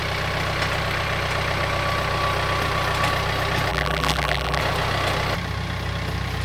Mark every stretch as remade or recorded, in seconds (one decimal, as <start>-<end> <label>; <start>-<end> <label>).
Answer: 0.0-3.7 recorded; 3.7-4.6 remade; 4.6-6.4 recorded